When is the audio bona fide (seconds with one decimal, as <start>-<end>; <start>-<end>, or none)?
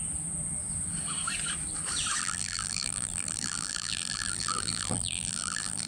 0.0-2.2